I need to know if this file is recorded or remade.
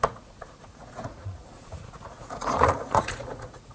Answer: remade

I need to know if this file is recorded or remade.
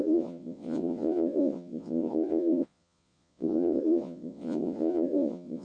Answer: remade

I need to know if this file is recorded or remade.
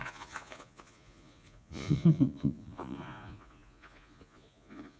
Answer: remade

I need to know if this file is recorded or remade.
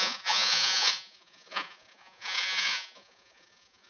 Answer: remade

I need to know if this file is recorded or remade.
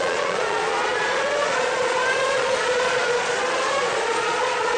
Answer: remade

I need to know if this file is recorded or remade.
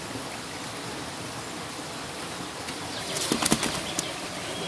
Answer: recorded